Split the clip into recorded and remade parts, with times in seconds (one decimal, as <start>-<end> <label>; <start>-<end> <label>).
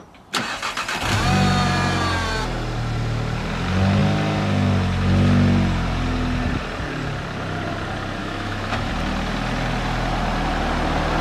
0.0-8.2 recorded; 8.2-8.9 remade; 8.9-11.2 recorded